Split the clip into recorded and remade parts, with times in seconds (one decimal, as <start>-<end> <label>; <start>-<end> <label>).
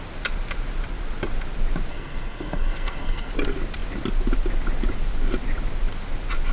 0.0-1.9 recorded; 1.9-3.3 remade; 3.3-6.5 recorded